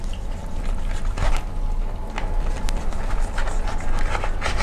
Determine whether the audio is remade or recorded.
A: recorded